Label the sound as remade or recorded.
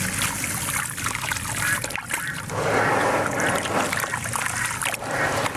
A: recorded